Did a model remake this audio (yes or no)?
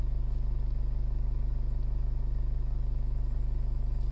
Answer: no